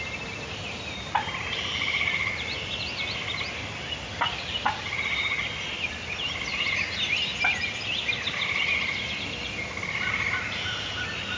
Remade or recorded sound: recorded